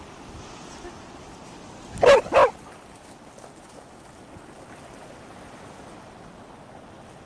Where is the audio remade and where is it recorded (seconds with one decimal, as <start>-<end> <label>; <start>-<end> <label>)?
0.0-7.3 recorded